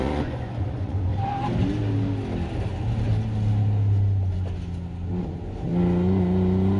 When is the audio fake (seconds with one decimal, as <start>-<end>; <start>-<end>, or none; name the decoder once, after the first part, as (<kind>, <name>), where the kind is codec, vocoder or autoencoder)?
0.0-1.1 (vocoder, Vocos); 5.2-5.7